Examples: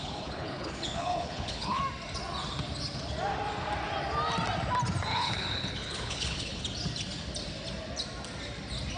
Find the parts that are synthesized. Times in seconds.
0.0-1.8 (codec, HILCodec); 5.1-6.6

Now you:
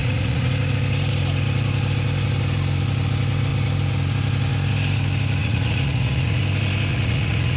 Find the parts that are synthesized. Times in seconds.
0.0-0.5 (vocoder, Vocos); 5.4-6.4; 6.9-7.6

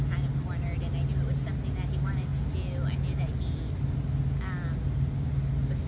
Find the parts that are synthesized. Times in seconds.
none